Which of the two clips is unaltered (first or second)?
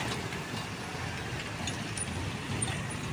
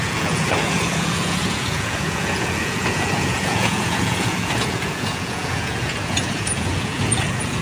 first